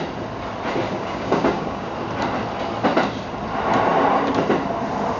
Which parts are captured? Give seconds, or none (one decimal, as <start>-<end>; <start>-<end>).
0.0-0.9; 1.9-5.2